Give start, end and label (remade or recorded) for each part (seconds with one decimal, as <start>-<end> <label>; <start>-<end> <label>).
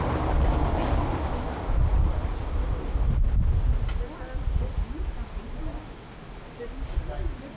0.0-7.6 recorded